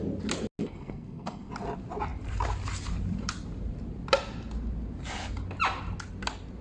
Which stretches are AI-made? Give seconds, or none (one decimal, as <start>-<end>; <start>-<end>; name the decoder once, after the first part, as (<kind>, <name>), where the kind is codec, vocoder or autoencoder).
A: 0.6-1.5 (codec, SNAC)